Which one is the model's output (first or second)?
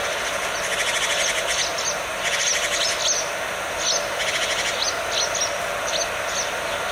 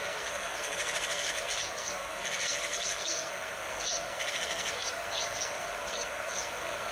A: second